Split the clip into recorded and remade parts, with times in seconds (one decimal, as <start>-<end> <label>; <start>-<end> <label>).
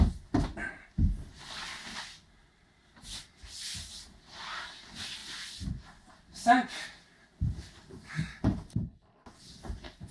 0.0-2.6 remade; 2.6-3.2 recorded; 3.2-5.2 remade; 5.2-6.1 recorded; 6.1-10.1 remade